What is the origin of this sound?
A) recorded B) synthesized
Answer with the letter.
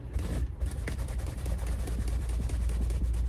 B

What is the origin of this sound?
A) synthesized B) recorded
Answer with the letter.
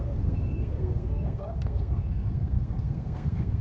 A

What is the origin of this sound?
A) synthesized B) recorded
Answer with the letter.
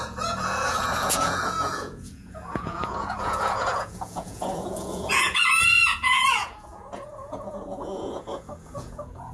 A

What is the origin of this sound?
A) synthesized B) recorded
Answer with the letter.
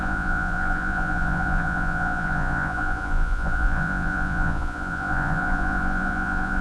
A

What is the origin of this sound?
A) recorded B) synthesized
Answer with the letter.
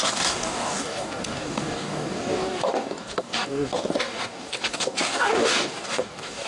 B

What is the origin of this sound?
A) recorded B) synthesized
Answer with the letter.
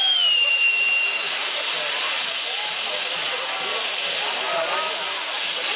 A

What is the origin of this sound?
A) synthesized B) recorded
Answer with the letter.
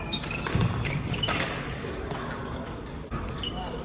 A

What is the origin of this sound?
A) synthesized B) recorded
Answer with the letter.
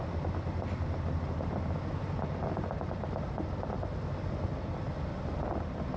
B